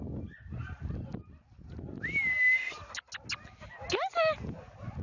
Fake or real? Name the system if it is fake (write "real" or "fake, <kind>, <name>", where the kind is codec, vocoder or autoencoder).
real